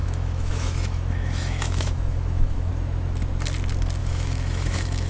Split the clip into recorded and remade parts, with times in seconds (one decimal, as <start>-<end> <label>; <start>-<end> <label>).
0.0-2.7 remade; 2.7-4.0 recorded; 4.0-5.1 remade